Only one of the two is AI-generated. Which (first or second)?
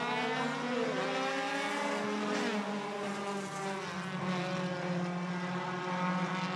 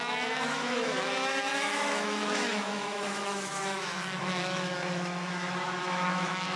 second